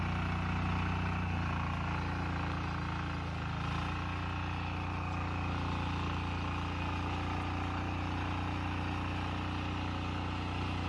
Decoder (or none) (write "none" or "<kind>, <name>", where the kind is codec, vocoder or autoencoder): none